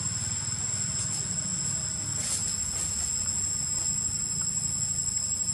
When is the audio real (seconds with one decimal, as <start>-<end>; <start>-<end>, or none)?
0.0-5.5